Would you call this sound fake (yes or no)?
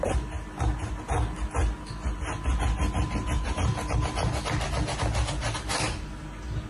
no